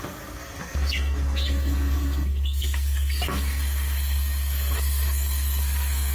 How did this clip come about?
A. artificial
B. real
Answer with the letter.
A